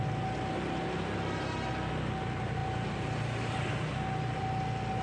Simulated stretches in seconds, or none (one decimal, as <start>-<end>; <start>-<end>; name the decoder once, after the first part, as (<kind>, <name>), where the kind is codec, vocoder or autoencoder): none

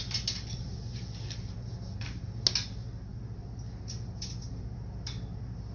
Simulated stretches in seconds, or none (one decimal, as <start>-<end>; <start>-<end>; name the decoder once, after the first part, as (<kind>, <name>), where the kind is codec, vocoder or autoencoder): none

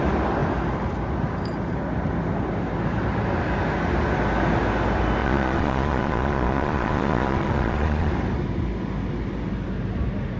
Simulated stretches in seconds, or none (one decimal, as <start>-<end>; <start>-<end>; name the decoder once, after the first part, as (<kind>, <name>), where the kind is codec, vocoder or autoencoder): 5.2-8.1 (vocoder, Vocos)

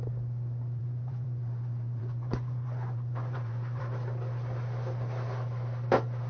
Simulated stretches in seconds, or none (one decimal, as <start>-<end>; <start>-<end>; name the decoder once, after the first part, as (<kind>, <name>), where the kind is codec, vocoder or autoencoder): 0.8-3.8 (vocoder, Vocos)

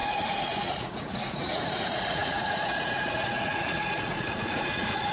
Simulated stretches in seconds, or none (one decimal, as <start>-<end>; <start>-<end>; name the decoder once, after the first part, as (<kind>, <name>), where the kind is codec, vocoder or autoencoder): 0.0-5.1 (vocoder, Vocos)

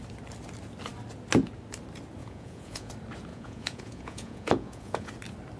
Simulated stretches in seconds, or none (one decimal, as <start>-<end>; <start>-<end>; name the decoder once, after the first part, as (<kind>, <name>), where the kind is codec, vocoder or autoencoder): 2.2-2.9 (vocoder, Vocos); 3.3-5.1